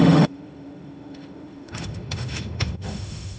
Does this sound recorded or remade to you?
remade